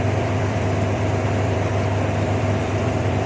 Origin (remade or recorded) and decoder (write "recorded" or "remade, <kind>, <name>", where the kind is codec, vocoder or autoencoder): remade, vocoder, BigVGAN v2